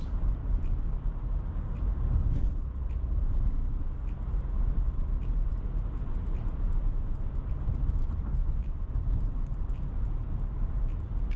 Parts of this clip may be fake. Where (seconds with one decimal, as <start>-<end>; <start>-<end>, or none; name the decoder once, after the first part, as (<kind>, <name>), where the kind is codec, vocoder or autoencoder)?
0.0-0.4 (vocoder, BigVGAN v2); 1.0-3.6; 7.5-8.3; 8.9-11.4